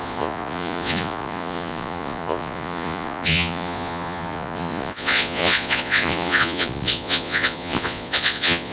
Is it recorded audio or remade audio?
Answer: remade